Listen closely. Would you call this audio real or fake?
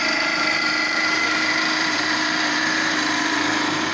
fake